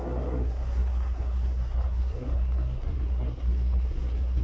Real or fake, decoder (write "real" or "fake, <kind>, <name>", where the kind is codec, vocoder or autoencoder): fake, codec, SNAC